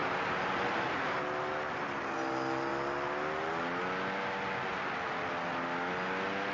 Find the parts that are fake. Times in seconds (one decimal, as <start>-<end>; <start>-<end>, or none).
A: none